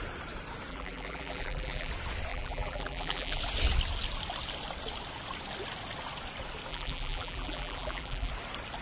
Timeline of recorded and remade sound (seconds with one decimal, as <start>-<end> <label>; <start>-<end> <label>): 0.0-0.7 recorded; 0.7-1.9 remade; 1.9-2.3 recorded; 2.3-3.4 remade; 3.4-6.7 recorded; 6.7-8.3 remade; 8.3-8.8 recorded